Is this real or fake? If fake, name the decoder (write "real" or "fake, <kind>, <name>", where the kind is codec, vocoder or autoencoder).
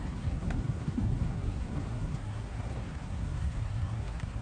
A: fake, codec, SNAC